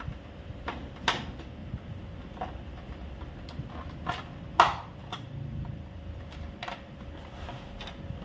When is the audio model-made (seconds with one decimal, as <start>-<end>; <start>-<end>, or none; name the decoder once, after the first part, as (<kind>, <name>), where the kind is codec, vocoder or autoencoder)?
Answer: 1.6-3.3 (vocoder, BigVGAN v2); 5.0-6.9